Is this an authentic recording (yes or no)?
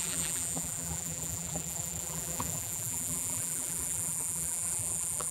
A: no